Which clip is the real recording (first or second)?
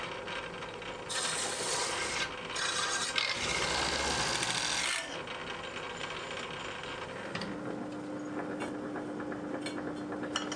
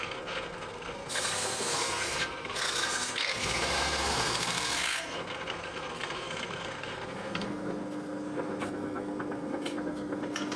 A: first